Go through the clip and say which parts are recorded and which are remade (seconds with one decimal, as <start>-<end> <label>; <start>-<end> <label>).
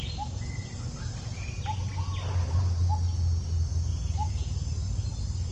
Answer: 0.0-0.6 recorded; 0.6-1.5 remade; 1.5-3.9 recorded; 3.9-5.1 remade; 5.1-5.5 recorded